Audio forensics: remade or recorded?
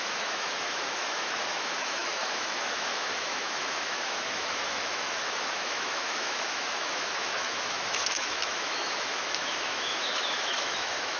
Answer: remade